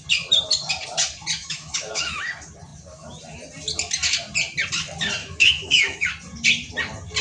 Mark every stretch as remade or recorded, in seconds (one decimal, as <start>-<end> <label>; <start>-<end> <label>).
0.0-1.4 recorded; 1.4-2.3 remade; 2.3-5.2 recorded; 5.2-6.1 remade; 6.1-7.2 recorded